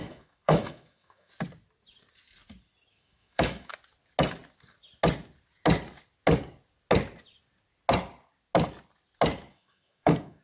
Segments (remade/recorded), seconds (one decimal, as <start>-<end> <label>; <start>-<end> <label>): 0.0-1.3 remade; 1.3-2.9 recorded; 2.9-3.7 remade; 3.7-9.5 recorded; 9.5-10.4 remade